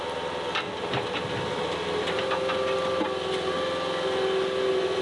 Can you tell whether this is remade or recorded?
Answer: recorded